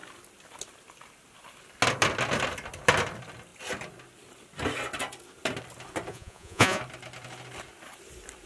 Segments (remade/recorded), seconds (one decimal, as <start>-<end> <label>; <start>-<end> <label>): 0.0-6.1 recorded; 6.1-6.8 remade; 6.8-8.5 recorded